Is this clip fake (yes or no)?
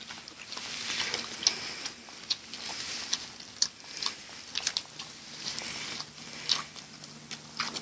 no